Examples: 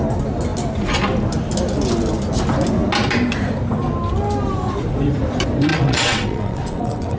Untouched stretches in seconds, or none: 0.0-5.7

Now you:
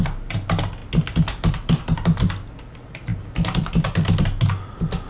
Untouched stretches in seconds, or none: 0.0-5.1